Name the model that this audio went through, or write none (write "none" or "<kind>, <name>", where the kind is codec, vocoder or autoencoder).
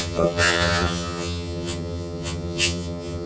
vocoder, HiFi-GAN